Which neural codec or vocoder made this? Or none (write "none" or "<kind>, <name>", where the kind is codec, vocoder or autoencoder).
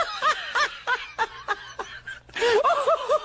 none